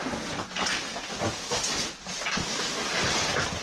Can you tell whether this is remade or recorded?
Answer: recorded